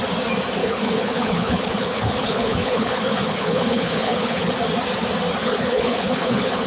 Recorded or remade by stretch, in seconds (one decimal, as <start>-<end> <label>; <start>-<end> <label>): 0.0-0.6 recorded; 0.6-4.5 remade; 4.5-5.4 recorded; 5.4-6.7 remade